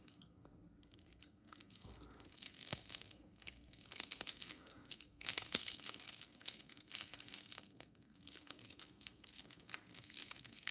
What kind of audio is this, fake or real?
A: fake